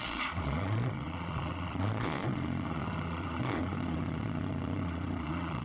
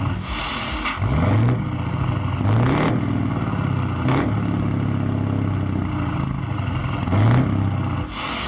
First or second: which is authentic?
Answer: second